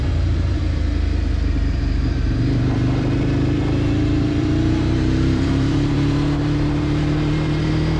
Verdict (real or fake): fake